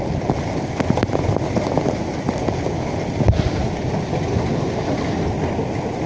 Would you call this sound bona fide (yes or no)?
yes